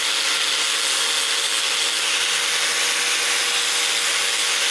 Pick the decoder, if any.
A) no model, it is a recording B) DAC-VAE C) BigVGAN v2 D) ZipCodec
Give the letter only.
A